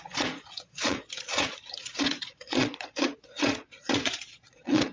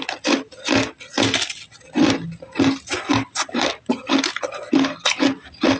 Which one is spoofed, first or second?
first